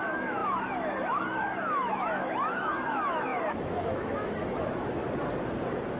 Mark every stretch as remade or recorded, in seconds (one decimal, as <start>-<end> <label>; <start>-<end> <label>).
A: 0.0-5.0 remade; 5.0-6.0 recorded